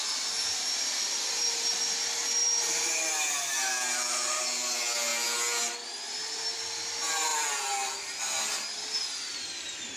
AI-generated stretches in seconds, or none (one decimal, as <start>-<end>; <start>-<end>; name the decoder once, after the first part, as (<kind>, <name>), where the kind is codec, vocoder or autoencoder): 0.0-5.1 (vocoder, BigVGAN v2); 6.1-10.0